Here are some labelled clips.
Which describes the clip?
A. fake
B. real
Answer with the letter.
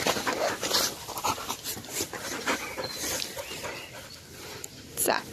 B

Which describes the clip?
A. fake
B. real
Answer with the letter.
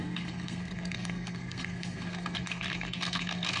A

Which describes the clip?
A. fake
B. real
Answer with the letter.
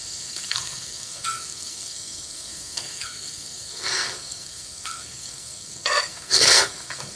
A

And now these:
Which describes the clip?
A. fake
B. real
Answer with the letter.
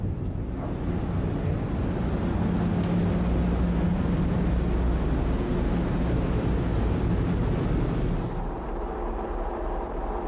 B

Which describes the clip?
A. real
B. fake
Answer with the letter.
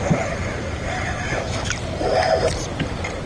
A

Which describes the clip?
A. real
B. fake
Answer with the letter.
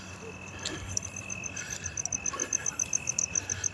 A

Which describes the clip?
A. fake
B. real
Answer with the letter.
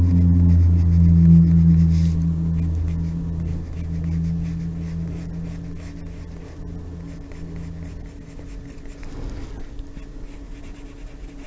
B